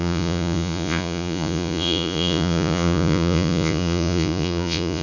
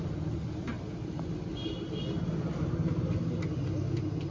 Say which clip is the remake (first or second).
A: first